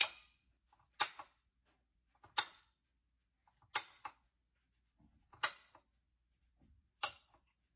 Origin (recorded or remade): recorded